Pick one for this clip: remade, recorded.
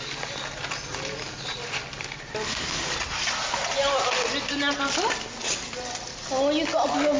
recorded